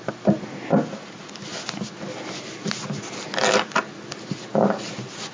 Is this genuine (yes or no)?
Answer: yes